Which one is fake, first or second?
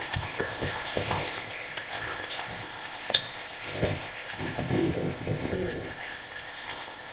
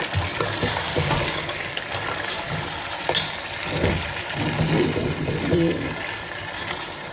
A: first